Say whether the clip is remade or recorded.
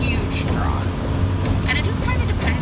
recorded